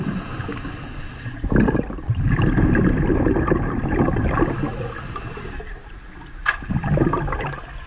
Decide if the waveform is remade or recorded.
recorded